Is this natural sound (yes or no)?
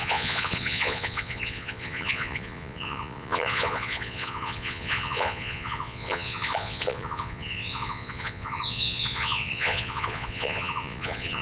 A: no